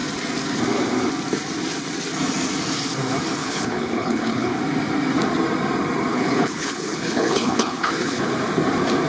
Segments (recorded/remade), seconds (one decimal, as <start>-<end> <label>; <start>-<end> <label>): 0.0-3.4 recorded; 3.4-4.6 remade; 4.6-6.1 recorded; 6.1-8.3 remade; 8.3-9.1 recorded